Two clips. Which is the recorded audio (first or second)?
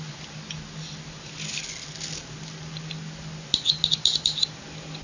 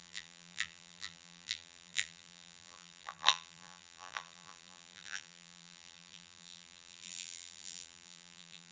first